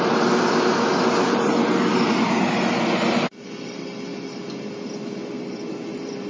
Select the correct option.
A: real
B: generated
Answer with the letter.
A